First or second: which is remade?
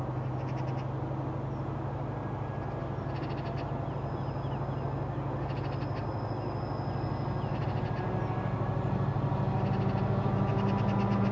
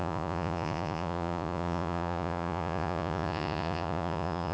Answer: second